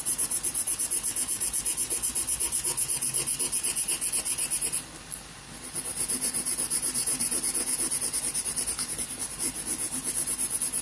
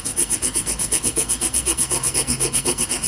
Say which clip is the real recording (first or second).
first